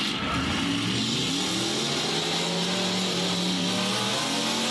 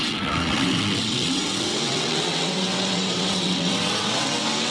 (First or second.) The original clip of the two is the first